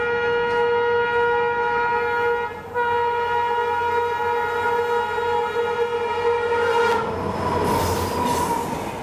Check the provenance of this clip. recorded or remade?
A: recorded